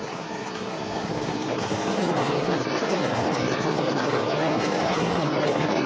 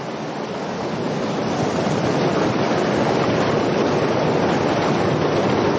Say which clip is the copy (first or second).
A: first